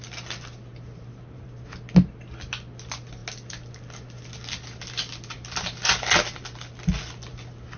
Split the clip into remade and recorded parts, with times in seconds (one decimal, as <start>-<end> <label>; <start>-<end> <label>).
0.0-0.7 recorded; 0.7-1.5 remade; 1.5-7.8 recorded